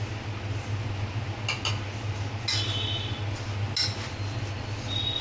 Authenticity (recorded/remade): recorded